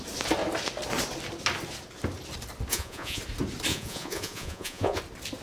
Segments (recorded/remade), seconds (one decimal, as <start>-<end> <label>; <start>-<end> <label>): 0.0-2.7 recorded; 2.7-3.2 remade; 3.2-3.7 recorded; 3.7-5.0 remade; 5.0-5.4 recorded